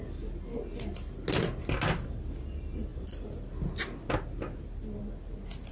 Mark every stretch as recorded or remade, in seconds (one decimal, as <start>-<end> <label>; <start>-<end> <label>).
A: 0.0-5.7 recorded